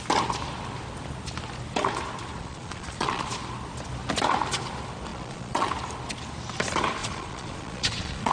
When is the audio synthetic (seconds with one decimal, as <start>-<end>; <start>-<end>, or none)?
2.4-3.3; 5.1-5.7; 7.0-8.3